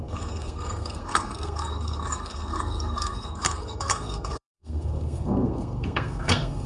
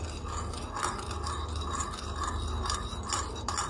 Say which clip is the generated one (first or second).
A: first